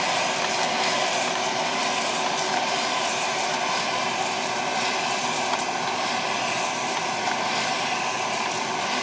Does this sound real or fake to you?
real